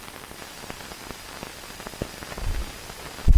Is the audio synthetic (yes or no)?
no